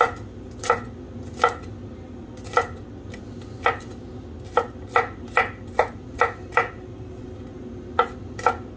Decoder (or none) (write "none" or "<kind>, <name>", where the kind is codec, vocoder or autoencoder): none